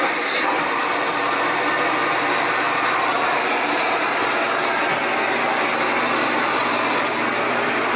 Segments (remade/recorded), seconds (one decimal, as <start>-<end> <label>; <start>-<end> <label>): 0.0-0.8 remade; 0.8-3.4 recorded; 3.4-4.2 remade; 4.2-7.5 recorded; 7.5-8.0 remade